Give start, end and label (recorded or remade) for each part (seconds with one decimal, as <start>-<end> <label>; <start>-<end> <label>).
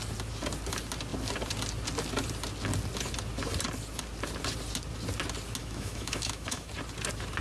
0.0-5.6 recorded; 5.6-6.7 remade; 6.7-7.4 recorded